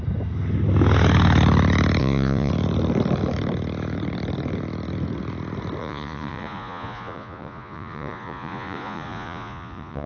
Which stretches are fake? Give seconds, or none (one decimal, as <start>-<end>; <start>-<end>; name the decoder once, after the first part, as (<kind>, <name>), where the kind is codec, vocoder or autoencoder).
2.0-2.5 (vocoder, Vocos); 5.8-10.1